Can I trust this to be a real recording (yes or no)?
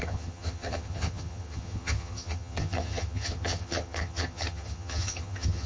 no